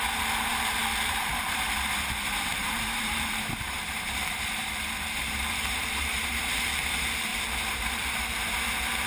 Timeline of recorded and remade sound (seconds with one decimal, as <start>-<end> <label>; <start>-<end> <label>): 0.0-0.5 recorded; 0.5-1.4 remade; 1.4-2.5 recorded; 2.5-6.7 remade; 6.7-7.3 recorded; 7.3-8.0 remade; 8.0-9.1 recorded

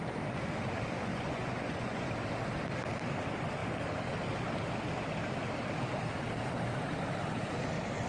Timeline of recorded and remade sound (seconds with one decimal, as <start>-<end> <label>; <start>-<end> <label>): 0.0-1.1 recorded; 1.1-2.1 remade; 2.1-8.1 recorded

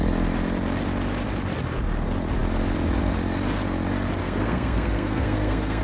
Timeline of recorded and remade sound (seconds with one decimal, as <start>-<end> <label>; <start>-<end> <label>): 0.0-4.2 recorded; 4.2-5.8 remade

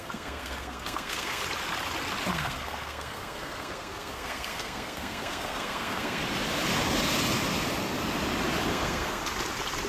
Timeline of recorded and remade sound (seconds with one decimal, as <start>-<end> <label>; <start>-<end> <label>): 0.0-1.4 remade; 1.4-2.3 recorded; 2.3-6.2 remade; 6.2-8.7 recorded; 8.7-9.2 remade; 9.2-9.9 recorded